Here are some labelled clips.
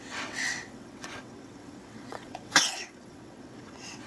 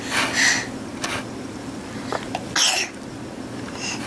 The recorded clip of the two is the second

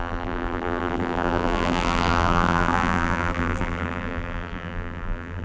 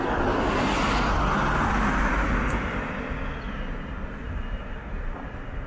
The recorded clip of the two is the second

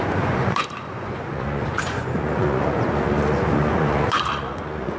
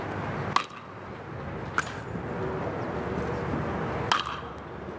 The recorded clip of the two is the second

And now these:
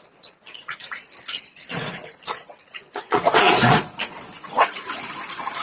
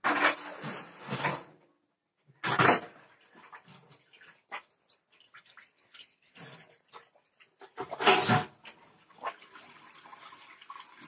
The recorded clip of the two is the second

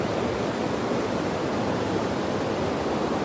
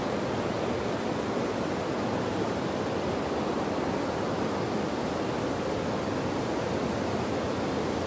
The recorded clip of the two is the second